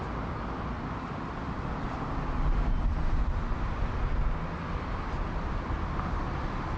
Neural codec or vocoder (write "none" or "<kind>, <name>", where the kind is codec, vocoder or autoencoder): none